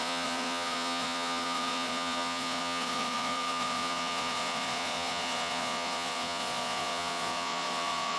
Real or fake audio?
fake